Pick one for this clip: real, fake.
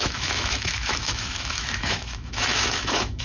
fake